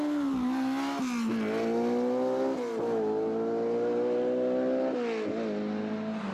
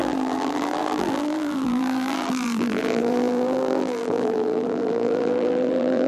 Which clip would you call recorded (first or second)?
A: first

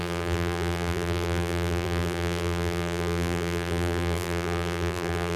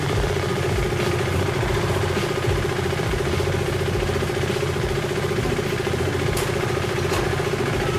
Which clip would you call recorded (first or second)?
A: second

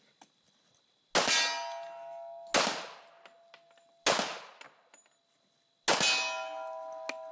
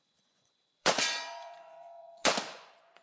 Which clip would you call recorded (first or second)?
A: first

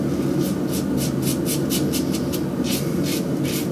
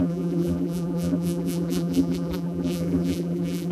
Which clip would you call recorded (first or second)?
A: first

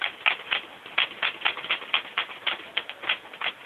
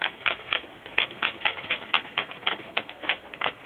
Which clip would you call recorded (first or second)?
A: first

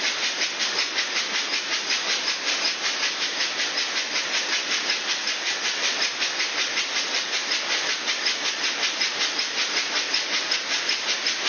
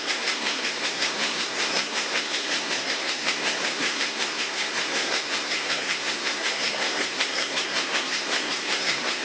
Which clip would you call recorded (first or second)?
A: first